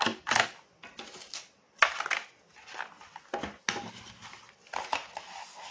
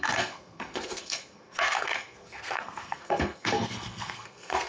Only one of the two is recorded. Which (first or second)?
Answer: first